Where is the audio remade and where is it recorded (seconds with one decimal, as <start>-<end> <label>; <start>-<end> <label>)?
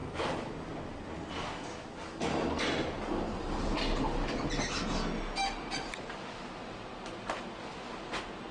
0.0-8.5 recorded